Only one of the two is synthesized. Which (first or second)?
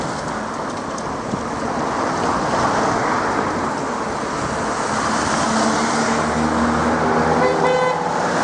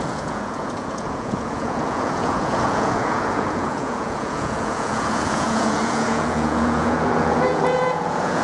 second